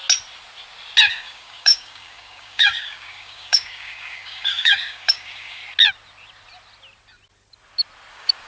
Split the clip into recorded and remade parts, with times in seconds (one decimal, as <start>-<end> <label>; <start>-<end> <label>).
0.0-1.1 recorded; 1.1-5.6 remade; 5.6-8.1 recorded; 8.1-8.5 remade